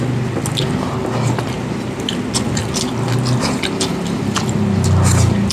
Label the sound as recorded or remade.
recorded